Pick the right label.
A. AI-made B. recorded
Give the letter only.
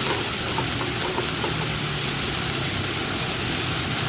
B